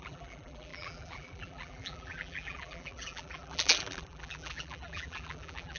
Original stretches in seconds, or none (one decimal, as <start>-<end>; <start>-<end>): none